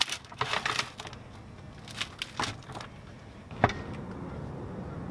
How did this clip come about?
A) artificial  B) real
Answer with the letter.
B